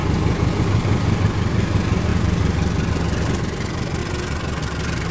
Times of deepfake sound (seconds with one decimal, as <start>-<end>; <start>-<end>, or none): 0.6-4.0; 4.6-5.1